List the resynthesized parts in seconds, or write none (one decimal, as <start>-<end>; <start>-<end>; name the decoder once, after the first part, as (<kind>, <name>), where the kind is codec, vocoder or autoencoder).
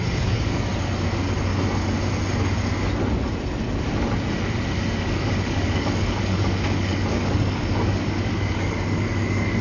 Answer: 0.0-0.7 (codec, DAC); 4.9-9.6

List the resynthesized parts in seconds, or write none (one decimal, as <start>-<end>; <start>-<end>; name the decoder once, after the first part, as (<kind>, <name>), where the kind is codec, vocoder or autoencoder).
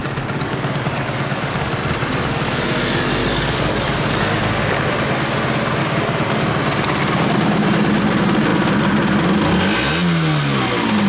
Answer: 0.0-1.7 (codec, DAC); 3.2-4.9; 5.8-6.5